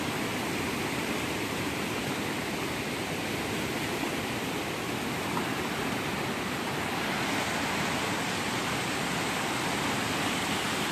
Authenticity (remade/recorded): recorded